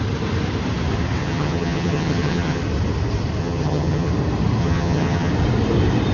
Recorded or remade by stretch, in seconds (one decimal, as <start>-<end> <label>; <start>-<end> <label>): 0.0-1.2 recorded; 1.2-2.6 remade; 2.6-3.4 recorded; 3.4-4.1 remade; 4.1-4.6 recorded; 4.6-5.3 remade; 5.3-6.1 recorded